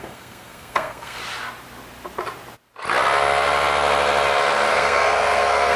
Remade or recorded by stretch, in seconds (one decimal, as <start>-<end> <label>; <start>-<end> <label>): 0.0-1.2 remade; 1.2-4.7 recorded; 4.7-5.8 remade